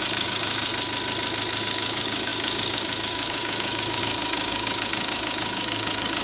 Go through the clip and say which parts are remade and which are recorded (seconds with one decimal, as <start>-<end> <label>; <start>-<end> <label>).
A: 0.0-0.7 remade; 0.7-1.6 recorded; 1.6-6.2 remade